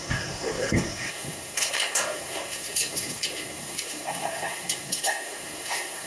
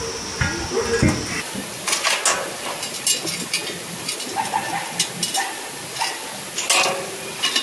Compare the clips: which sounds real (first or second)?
second